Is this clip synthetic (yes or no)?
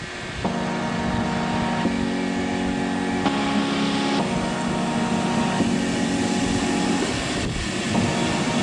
no